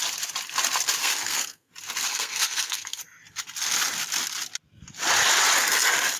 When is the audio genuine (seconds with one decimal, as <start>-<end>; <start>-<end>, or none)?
0.0-1.0; 1.7-2.1; 3.0-6.2